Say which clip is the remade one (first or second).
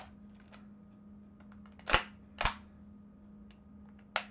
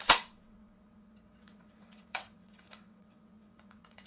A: second